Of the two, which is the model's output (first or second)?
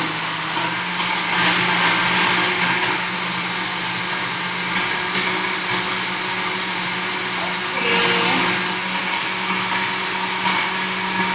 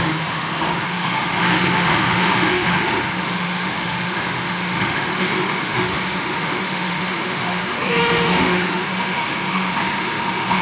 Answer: second